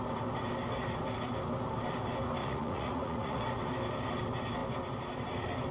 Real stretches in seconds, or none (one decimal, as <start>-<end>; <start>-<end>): 0.0-2.4; 3.4-5.7